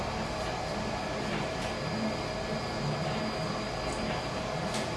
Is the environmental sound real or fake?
real